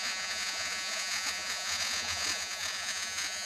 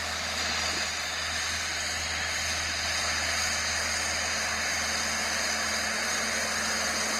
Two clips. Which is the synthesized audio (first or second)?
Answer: first